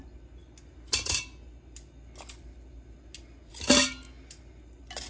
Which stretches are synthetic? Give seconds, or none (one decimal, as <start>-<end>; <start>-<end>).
none